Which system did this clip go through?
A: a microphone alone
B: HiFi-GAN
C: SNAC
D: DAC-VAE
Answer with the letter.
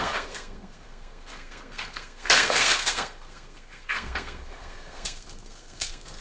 C